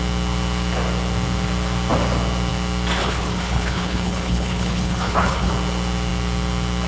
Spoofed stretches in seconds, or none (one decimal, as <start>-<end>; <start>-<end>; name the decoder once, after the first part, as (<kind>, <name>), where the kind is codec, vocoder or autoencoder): 3.0-5.5 (codec, HILCodec)